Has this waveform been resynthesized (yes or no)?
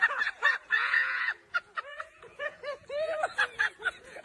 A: yes